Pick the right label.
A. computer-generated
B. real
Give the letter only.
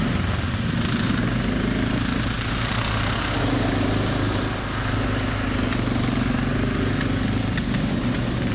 B